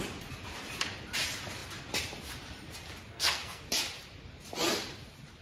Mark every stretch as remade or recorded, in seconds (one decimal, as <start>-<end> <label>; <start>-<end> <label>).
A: 0.0-3.1 recorded; 3.1-3.6 remade; 3.6-5.4 recorded